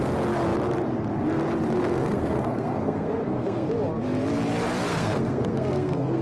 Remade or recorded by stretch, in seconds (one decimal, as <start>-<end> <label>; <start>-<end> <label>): 0.0-1.8 recorded; 1.8-3.7 remade; 3.7-4.9 recorded; 4.9-6.2 remade